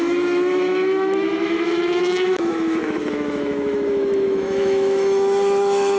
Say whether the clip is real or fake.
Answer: fake